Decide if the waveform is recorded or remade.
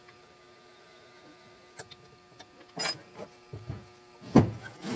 recorded